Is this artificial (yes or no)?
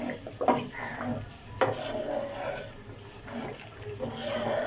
no